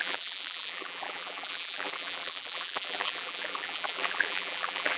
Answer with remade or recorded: remade